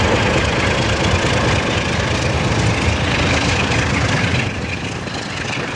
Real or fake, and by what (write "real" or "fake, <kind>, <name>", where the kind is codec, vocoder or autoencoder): real